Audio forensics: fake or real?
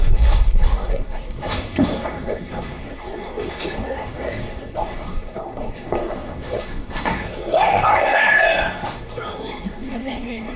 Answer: fake